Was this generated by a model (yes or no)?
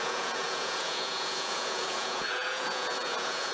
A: yes